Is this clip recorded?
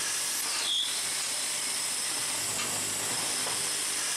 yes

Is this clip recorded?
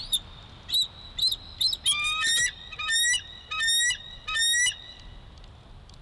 yes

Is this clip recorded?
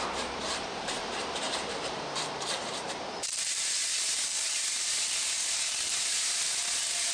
no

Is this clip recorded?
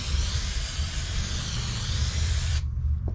no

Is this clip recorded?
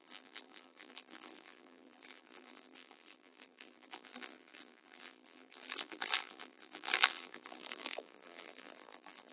no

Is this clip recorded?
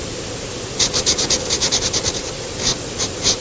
yes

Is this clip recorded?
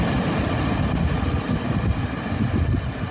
yes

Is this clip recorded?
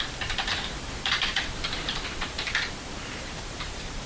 no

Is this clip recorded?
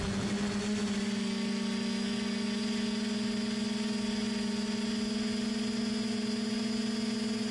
yes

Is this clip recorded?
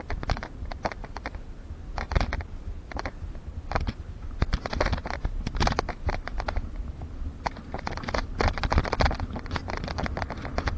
yes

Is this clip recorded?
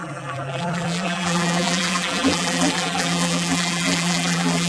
no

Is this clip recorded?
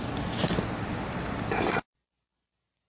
yes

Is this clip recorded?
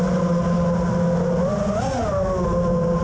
yes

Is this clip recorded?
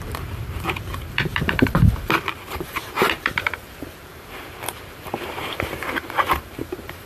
no